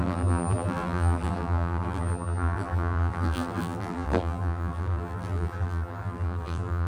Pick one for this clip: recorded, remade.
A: remade